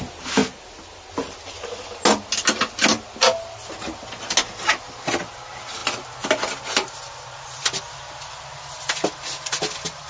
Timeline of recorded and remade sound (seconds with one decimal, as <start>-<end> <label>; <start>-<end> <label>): 0.0-10.1 recorded